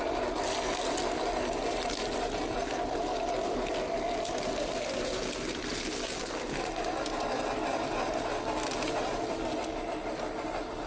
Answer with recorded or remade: recorded